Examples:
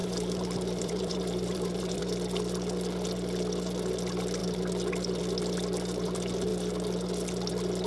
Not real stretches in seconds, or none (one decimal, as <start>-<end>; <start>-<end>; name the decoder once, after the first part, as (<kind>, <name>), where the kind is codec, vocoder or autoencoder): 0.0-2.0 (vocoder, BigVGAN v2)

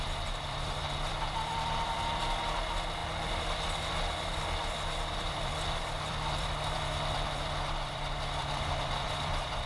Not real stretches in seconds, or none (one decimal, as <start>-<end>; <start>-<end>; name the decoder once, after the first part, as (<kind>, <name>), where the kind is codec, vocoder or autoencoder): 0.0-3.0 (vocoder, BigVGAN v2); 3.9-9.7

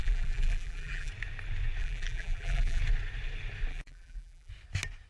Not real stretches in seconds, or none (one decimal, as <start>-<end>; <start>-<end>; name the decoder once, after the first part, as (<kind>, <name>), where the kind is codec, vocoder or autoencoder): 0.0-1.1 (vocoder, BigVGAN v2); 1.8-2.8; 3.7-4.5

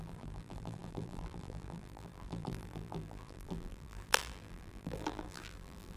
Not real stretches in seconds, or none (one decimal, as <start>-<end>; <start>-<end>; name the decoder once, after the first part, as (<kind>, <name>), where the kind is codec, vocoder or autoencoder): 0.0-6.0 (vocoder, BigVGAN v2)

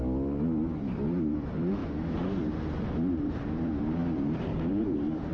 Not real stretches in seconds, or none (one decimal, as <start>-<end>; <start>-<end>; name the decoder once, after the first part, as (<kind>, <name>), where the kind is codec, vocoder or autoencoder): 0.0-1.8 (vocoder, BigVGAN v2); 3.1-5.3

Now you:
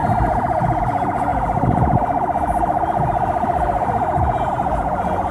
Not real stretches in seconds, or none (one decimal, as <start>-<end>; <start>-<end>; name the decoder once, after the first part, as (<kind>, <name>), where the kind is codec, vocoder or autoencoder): none